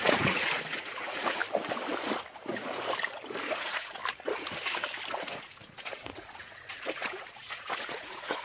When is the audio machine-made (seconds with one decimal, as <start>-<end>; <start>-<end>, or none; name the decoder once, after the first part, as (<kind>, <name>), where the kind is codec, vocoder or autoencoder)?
0.0-1.4 (vocoder, Vocos); 3.5-4.0; 5.1-8.4